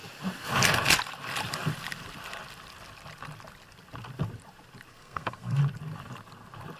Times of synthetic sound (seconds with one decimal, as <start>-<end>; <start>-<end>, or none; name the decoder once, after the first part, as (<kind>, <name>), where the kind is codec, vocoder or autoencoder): 4.9-5.6 (codec, SNAC)